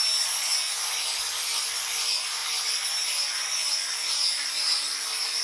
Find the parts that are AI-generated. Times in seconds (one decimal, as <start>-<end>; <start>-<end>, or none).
0.0-0.5; 1.1-5.4